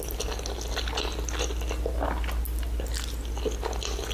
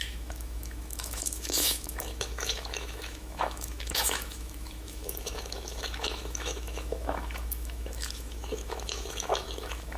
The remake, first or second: second